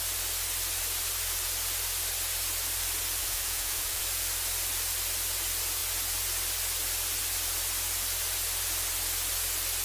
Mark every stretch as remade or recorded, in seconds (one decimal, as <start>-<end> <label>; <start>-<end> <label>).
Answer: 0.0-3.2 recorded; 3.2-4.0 remade; 4.0-9.8 recorded